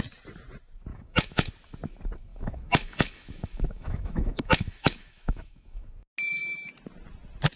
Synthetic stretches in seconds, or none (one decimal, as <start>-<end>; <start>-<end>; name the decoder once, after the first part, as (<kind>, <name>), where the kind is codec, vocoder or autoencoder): 0.9-1.5 (autoencoder, DAC-VAE); 2.3-5.9